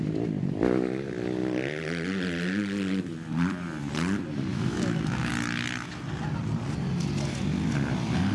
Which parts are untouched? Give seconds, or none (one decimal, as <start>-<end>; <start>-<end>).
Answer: 0.0-4.5; 5.3-8.3